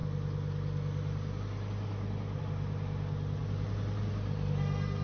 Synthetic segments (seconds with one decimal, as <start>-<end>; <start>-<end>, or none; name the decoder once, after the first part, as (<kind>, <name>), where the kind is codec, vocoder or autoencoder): none